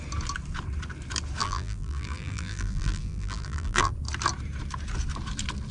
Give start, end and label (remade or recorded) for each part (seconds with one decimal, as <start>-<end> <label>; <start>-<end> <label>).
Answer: 0.0-1.4 recorded; 1.4-3.9 remade; 3.9-5.7 recorded